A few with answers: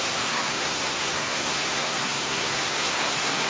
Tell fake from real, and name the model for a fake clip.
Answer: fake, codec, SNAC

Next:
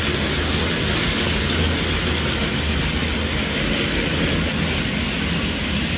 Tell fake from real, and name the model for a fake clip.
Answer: real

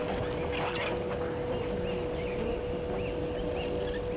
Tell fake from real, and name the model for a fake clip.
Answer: real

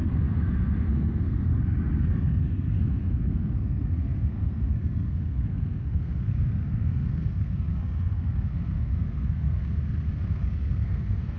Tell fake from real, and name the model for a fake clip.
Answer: fake, codec, SNAC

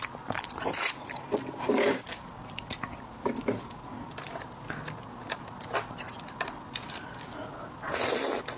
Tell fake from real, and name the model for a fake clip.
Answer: real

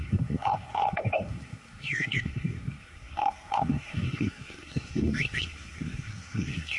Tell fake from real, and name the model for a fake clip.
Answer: fake, codec, SNAC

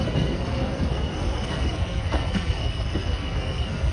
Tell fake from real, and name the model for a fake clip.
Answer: fake, codec, SNAC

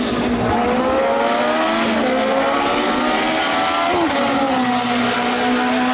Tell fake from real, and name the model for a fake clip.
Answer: real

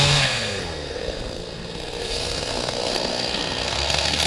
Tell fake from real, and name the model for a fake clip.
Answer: fake, codec, SNAC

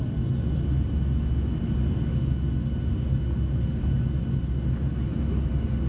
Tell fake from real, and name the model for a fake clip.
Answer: real